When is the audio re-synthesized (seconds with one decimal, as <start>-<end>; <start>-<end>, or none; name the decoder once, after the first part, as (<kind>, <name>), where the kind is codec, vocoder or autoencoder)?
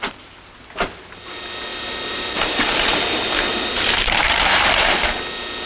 1.7-5.1 (vocoder, BigVGAN v2)